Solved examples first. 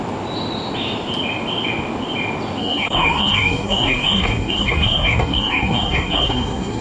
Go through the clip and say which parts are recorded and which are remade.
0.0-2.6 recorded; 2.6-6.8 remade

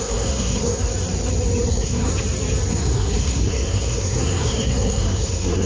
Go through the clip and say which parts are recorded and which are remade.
0.0-0.8 remade; 0.8-1.7 recorded; 1.7-2.1 remade; 2.1-2.7 recorded; 2.7-5.7 remade

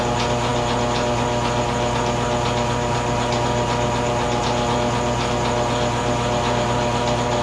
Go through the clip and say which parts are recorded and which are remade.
0.0-7.4 recorded

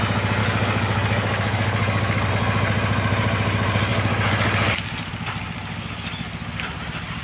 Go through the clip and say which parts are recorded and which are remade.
0.0-0.4 recorded; 0.4-2.3 remade; 2.3-7.2 recorded

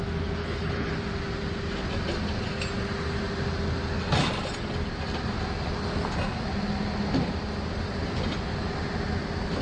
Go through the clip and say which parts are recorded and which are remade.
0.0-0.4 recorded; 0.4-0.9 remade; 0.9-9.6 recorded

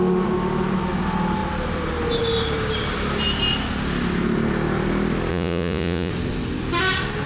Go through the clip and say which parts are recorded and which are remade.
0.0-5.3 recorded; 5.3-6.1 remade; 6.1-7.3 recorded

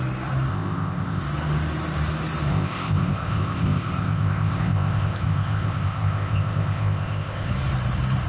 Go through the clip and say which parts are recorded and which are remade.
0.0-0.5 recorded; 0.5-1.2 remade; 1.2-2.5 recorded; 2.5-7.5 remade; 7.5-8.3 recorded

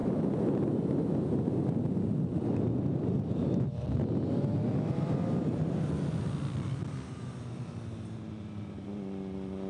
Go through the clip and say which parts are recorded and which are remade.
0.0-9.7 recorded